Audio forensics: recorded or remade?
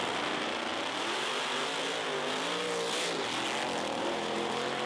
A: recorded